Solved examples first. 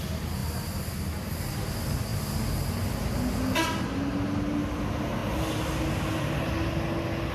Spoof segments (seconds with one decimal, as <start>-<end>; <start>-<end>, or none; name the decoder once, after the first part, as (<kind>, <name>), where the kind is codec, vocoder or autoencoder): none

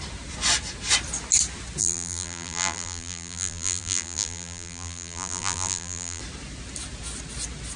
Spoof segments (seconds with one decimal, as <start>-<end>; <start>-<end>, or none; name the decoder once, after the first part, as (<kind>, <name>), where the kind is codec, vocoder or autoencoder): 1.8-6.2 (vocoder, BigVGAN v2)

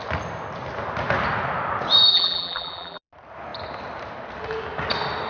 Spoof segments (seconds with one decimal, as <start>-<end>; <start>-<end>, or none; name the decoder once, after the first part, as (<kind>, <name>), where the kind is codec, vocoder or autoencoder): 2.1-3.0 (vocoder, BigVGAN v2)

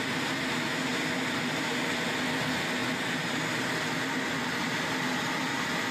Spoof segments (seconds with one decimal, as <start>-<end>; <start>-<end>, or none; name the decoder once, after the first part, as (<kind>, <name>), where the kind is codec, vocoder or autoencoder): none

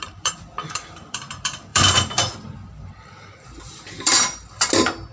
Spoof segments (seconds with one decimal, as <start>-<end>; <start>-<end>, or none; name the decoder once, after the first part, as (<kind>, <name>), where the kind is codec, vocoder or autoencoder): 0.0-5.1 (vocoder, BigVGAN v2)